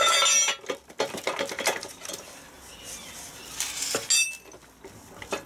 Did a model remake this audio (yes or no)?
no